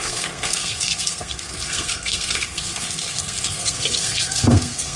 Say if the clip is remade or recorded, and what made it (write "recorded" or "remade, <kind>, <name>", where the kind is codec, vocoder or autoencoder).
remade, codec, SNAC